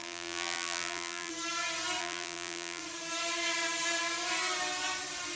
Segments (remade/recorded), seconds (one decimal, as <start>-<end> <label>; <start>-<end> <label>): 0.0-1.3 remade; 1.3-2.0 recorded; 2.0-2.8 remade; 2.8-5.4 recorded